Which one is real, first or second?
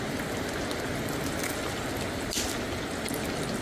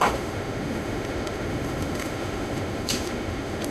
first